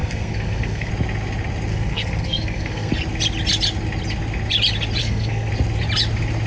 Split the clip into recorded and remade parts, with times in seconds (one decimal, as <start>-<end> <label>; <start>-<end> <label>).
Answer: 0.0-0.9 remade; 0.9-1.7 recorded; 1.7-2.9 remade; 2.9-5.0 recorded; 5.0-5.5 remade; 5.5-6.5 recorded